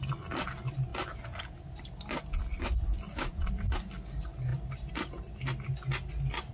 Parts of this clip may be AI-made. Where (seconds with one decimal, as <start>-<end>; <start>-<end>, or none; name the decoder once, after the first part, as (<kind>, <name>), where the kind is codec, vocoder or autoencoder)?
none